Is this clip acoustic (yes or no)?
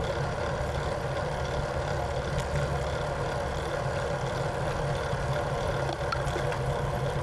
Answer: yes